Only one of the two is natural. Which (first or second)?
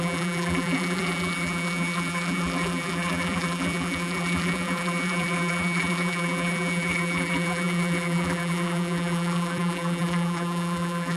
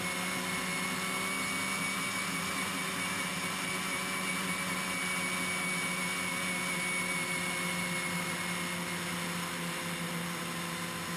second